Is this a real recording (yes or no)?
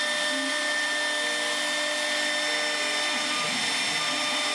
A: yes